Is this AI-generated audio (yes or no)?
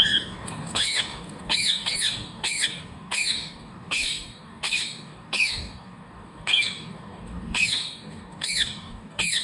yes